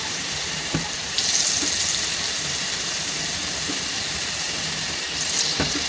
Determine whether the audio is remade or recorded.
remade